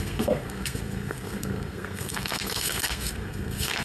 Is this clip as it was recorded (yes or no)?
no